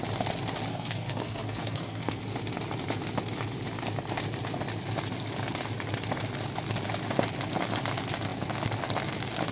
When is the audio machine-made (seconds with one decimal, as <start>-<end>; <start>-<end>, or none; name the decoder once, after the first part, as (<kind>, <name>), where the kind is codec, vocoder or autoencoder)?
0.7-2.1 (codec, SNAC)